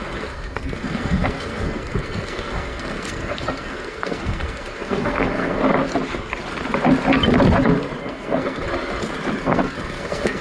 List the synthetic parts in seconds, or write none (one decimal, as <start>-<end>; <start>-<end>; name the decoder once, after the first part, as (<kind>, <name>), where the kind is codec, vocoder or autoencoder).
0.0-5.6 (codec, SNAC); 8.0-8.7; 9.4-10.4